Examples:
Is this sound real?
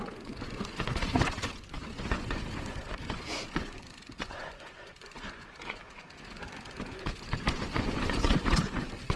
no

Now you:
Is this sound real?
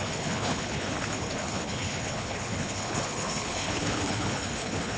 no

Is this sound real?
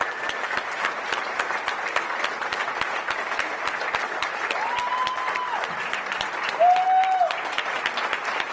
yes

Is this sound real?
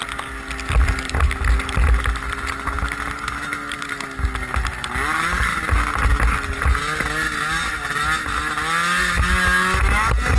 yes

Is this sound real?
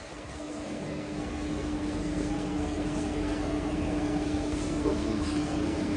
no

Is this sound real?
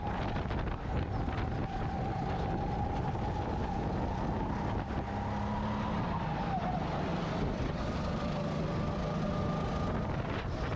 yes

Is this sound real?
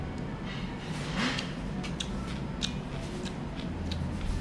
yes